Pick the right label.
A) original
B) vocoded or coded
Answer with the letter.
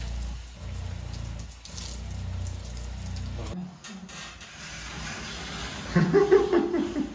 A